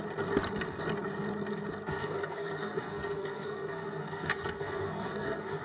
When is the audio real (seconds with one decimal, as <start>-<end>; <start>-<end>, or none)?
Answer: 0.0-1.9